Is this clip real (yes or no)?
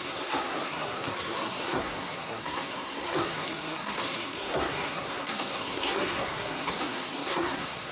no